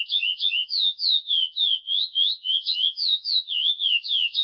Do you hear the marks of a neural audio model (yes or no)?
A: yes